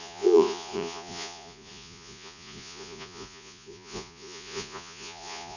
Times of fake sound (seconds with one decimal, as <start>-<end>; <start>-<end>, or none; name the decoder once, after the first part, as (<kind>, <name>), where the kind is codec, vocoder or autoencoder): 0.0-5.6 (vocoder, Vocos)